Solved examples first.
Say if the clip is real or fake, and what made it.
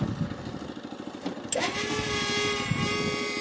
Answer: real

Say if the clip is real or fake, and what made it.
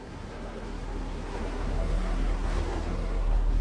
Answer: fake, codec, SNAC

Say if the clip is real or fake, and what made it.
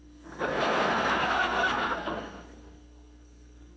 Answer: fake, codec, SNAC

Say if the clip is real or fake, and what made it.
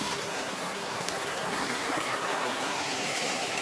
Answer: fake, codec, SNAC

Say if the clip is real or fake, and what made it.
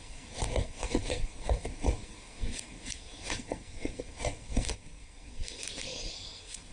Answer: fake, codec, SNAC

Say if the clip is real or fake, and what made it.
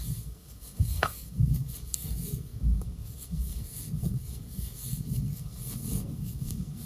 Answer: fake, codec, SNAC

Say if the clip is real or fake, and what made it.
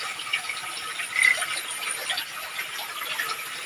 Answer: real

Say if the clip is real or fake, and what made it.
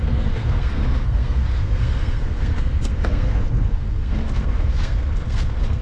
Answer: fake, codec, SNAC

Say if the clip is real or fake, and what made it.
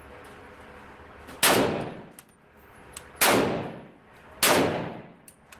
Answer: real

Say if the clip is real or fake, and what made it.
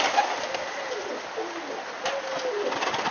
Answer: real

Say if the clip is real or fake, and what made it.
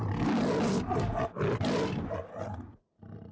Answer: real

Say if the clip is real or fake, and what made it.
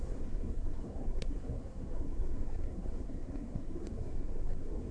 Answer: fake, codec, SNAC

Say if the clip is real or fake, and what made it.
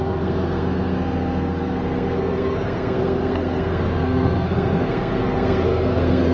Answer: fake, codec, SNAC